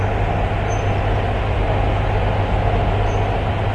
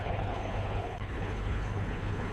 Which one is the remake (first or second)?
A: second